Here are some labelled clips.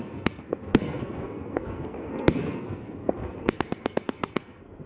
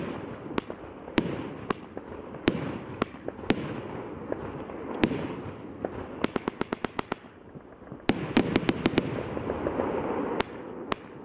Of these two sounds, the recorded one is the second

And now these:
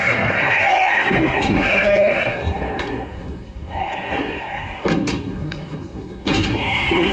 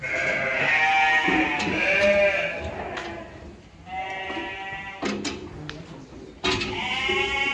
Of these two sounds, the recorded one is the second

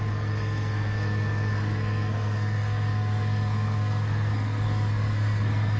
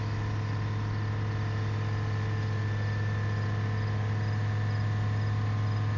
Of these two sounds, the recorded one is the second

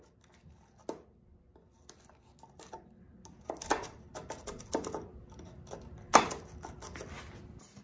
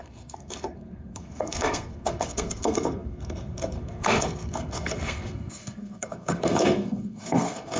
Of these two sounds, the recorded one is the first